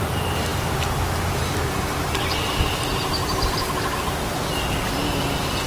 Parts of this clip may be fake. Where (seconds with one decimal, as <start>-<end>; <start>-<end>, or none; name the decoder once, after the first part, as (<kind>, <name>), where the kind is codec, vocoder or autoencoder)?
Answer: none